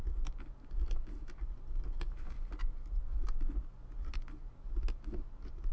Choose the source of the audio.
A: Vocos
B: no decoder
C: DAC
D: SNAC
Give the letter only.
B